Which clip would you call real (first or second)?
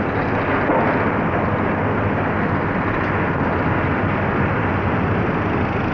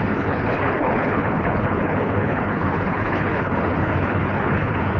first